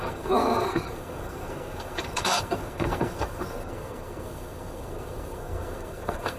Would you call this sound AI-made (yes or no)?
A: yes